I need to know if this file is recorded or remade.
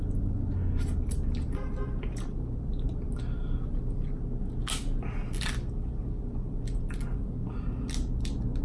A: recorded